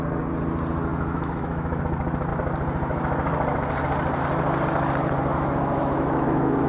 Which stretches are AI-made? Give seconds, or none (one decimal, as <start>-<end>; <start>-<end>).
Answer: 0.9-1.8; 5.3-6.7